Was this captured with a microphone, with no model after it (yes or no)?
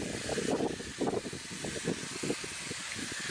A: yes